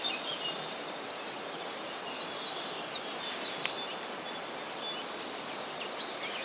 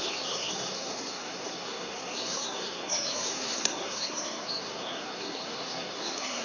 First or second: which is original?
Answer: first